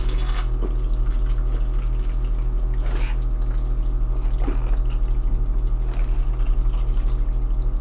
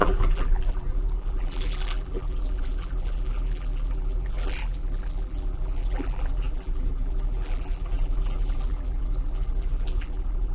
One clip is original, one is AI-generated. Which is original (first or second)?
first